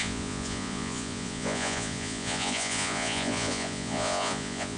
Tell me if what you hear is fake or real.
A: fake